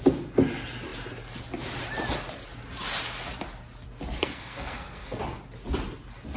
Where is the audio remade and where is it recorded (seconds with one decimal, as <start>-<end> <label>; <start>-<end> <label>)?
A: 0.0-4.2 recorded; 4.2-5.2 remade; 5.2-6.4 recorded